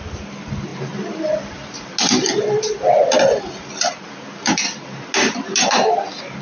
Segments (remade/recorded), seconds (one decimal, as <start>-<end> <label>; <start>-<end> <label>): 0.0-6.4 recorded